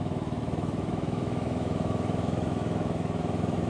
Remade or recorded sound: remade